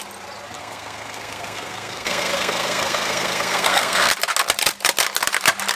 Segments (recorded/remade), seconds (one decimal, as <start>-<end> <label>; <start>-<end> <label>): 0.0-0.6 recorded; 0.6-4.1 remade; 4.1-5.8 recorded